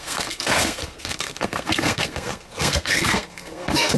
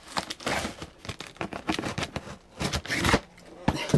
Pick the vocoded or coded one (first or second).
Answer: first